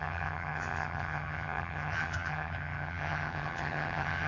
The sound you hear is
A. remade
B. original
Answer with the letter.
A